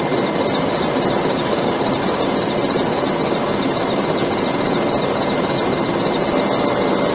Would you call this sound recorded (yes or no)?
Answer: yes